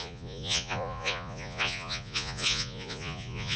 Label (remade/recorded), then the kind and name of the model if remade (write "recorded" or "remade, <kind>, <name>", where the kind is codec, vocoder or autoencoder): remade, vocoder, Vocos